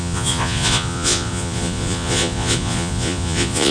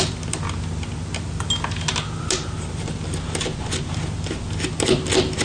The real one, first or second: second